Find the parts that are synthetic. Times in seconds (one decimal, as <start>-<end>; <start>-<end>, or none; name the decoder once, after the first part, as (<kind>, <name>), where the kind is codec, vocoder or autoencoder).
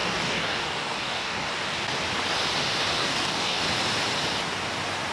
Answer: 0.0-1.5 (codec, DAC); 3.0-3.6